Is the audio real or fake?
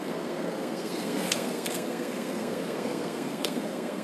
fake